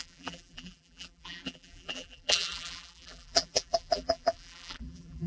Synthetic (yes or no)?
yes